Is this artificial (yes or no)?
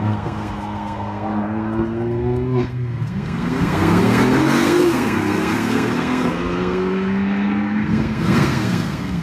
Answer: yes